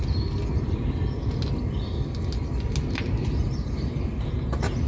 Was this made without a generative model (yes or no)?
yes